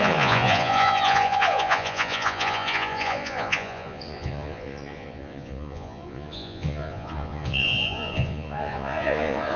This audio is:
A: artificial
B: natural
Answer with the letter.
A